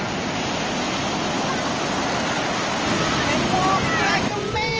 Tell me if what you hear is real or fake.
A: real